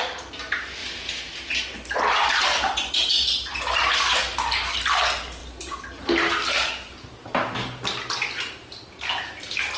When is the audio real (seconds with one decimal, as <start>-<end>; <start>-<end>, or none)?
0.0-9.8